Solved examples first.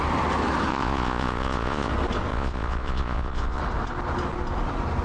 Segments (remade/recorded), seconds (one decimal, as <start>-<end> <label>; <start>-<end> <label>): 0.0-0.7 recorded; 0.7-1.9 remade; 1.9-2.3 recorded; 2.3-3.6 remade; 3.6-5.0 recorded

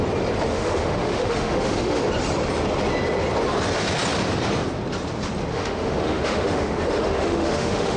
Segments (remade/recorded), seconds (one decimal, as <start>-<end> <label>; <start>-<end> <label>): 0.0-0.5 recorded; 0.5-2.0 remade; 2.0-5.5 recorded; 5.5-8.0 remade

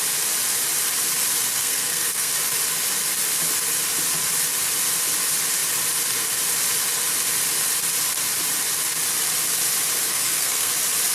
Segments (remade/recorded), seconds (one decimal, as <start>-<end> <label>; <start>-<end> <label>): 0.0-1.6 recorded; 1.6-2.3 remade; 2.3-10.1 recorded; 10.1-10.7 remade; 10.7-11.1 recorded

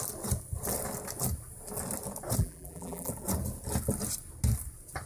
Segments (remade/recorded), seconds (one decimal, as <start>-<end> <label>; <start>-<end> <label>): 0.0-2.4 recorded; 2.4-3.1 remade; 3.1-5.1 recorded

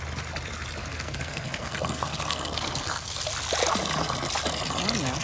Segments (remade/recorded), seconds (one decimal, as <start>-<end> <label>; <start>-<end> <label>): 0.0-0.9 recorded; 0.9-3.2 remade; 3.2-5.2 recorded

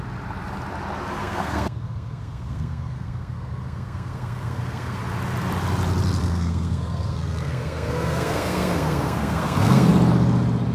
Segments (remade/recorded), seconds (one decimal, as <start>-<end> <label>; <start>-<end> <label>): 0.0-1.2 recorded; 1.2-5.0 remade; 5.0-6.2 recorded; 6.2-9.9 remade; 9.9-10.7 recorded